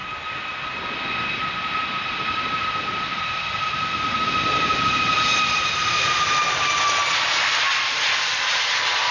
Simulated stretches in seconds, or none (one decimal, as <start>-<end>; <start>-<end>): none